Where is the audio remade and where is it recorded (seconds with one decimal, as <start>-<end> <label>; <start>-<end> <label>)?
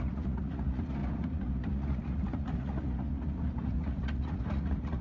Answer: 0.0-5.0 remade